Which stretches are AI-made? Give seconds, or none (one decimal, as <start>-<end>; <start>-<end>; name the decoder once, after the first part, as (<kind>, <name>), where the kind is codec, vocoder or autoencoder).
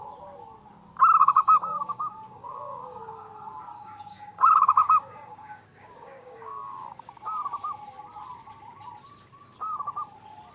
1.2-3.3 (codec, DAC); 3.7-7.1